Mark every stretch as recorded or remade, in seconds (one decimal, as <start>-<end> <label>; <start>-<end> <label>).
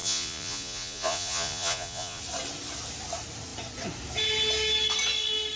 0.0-2.2 remade; 2.2-5.6 recorded